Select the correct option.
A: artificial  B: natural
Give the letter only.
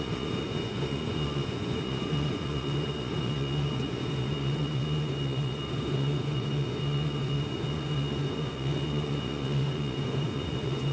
A